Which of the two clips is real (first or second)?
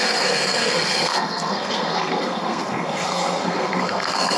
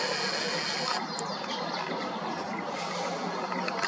second